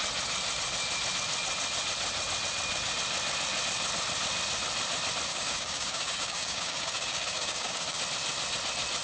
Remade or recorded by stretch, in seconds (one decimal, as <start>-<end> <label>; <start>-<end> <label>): 0.0-5.3 recorded; 5.3-8.0 remade; 8.0-9.0 recorded